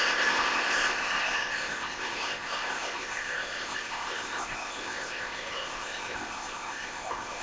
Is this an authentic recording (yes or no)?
no